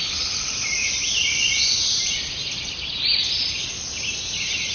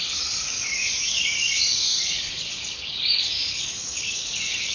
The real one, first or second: first